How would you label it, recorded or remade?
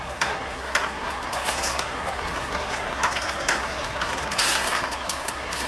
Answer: remade